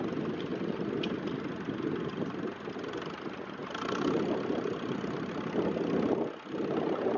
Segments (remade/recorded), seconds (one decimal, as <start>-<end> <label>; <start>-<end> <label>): 0.0-7.2 recorded